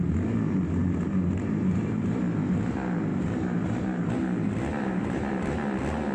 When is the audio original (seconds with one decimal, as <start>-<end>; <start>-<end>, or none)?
0.0-0.8; 2.2-3.1; 4.1-4.8; 5.3-6.1